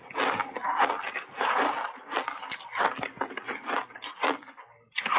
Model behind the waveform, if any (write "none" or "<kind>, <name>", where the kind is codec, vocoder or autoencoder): none